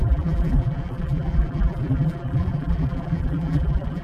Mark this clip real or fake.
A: fake